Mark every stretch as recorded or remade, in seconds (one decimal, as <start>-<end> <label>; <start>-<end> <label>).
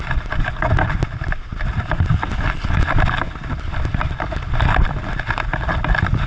0.0-6.3 recorded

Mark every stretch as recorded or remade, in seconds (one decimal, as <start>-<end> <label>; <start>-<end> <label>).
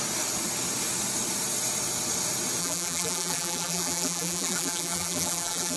0.0-2.6 recorded; 2.6-5.8 remade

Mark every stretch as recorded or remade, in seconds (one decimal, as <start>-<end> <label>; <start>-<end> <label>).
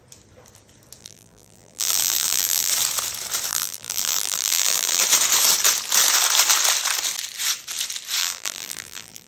0.0-1.0 recorded; 1.0-2.7 remade; 2.7-3.5 recorded; 3.5-5.0 remade; 5.0-8.2 recorded; 8.2-9.3 remade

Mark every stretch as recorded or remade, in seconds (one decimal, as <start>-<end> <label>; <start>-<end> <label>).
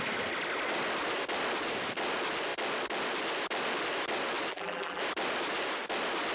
0.0-4.5 recorded; 4.5-5.0 remade; 5.0-6.3 recorded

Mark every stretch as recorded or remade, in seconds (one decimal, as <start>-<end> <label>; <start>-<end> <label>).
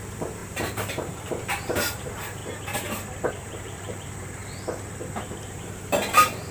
0.0-2.4 remade; 2.4-3.3 recorded; 3.3-4.4 remade; 4.4-5.5 recorded; 5.5-6.5 remade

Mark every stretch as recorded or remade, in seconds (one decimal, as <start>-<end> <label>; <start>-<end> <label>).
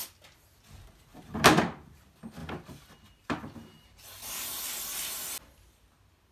0.0-1.1 recorded; 1.1-2.0 remade; 2.0-2.4 recorded; 2.4-4.6 remade; 4.6-6.3 recorded